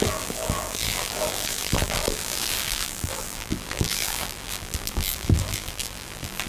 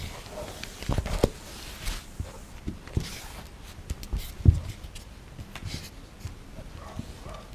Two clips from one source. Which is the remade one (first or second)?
first